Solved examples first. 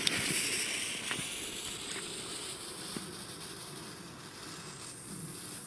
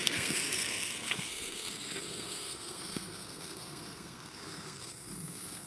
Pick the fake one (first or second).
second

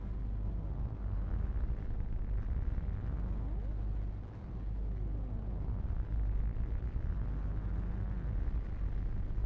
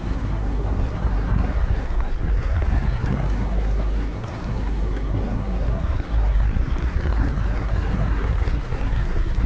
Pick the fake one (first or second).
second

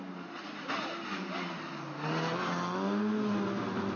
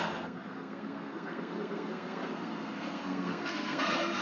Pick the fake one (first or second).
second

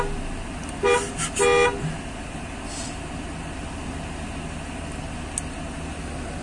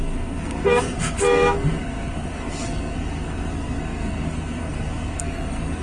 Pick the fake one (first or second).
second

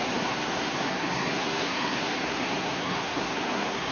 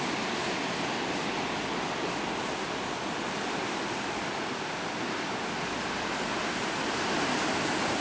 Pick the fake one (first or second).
first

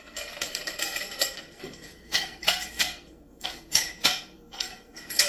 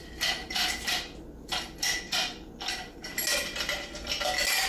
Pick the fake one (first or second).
first